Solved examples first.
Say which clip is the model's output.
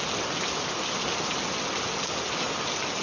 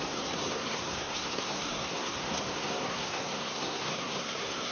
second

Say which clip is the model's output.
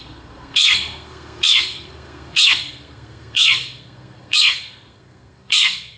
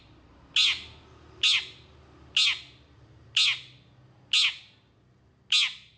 first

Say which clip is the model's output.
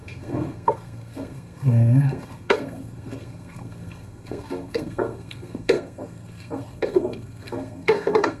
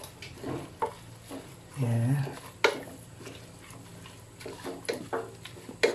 first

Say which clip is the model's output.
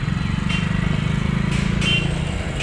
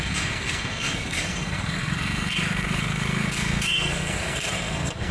second